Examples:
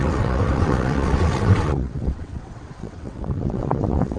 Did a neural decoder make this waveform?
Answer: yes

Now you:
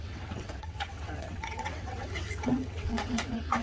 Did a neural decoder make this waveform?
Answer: yes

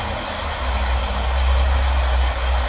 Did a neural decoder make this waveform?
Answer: no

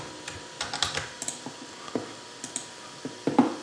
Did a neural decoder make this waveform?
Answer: no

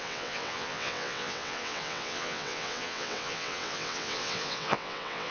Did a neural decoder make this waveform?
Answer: yes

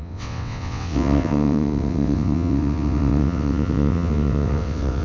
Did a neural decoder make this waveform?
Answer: yes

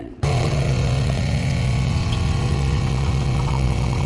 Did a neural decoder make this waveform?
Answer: yes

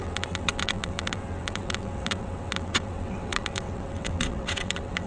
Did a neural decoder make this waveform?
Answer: yes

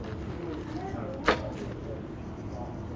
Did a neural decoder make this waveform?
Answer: no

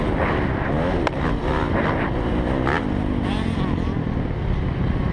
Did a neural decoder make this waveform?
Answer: no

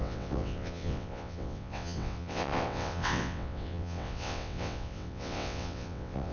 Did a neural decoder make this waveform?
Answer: yes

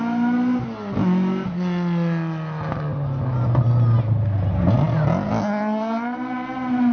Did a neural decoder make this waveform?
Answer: no